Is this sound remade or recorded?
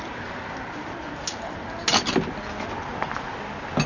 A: recorded